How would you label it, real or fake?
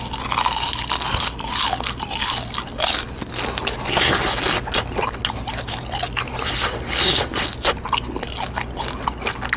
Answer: real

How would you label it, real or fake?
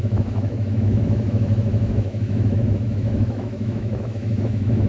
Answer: fake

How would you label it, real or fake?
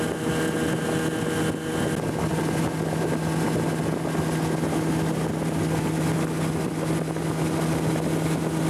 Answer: real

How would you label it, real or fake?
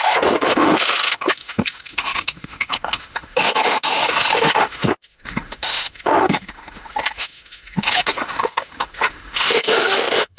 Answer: fake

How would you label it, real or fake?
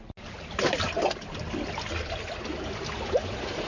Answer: real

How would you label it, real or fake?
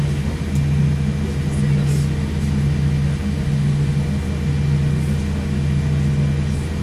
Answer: real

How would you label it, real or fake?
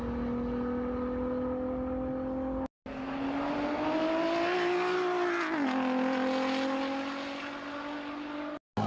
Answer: real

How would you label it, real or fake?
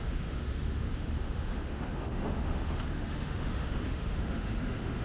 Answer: fake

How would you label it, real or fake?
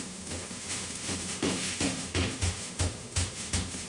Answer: fake